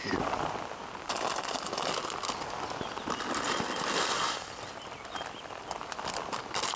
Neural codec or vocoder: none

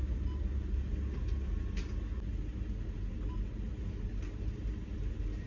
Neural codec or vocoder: none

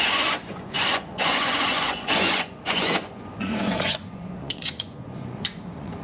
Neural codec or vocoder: vocoder, Vocos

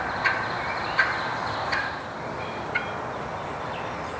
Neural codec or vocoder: none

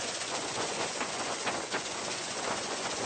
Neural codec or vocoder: vocoder, Vocos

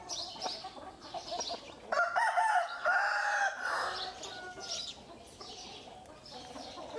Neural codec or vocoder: none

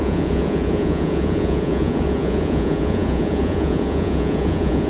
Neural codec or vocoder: vocoder, Vocos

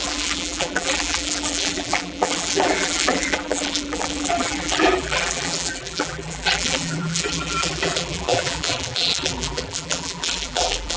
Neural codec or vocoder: vocoder, BigVGAN v2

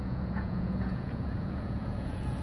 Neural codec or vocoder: vocoder, Vocos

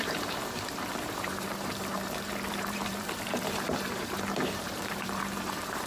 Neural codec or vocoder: vocoder, BigVGAN v2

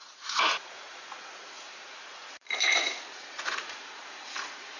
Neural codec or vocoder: vocoder, Vocos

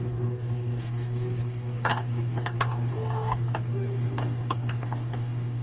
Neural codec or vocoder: codec, DAC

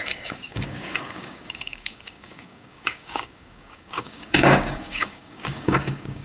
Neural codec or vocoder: codec, DAC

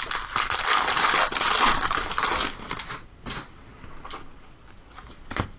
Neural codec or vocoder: none